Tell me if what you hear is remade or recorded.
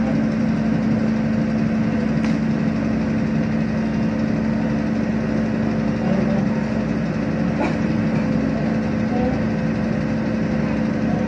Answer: recorded